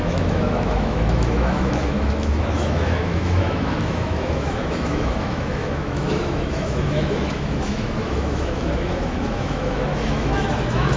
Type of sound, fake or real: fake